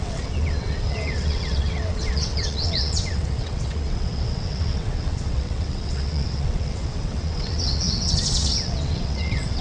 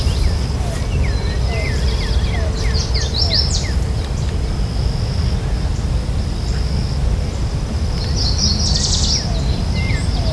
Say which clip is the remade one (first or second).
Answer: first